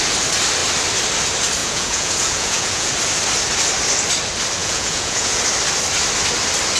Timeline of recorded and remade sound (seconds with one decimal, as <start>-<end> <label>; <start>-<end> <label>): 0.0-1.6 recorded; 1.6-2.9 remade; 2.9-4.6 recorded; 4.6-5.4 remade; 5.4-6.8 recorded